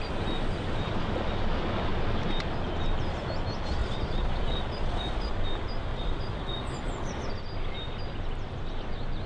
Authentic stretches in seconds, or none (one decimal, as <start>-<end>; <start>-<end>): 0.0-3.8; 5.3-5.9; 7.3-9.3